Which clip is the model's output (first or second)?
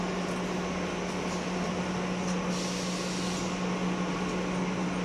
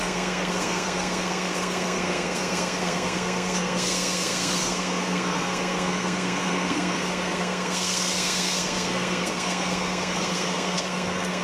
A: second